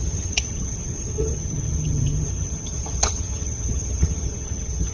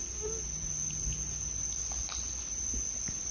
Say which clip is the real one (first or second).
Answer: second